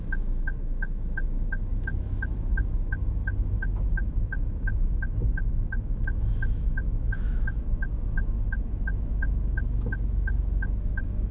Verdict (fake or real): fake